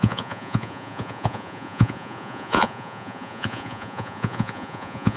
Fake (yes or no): yes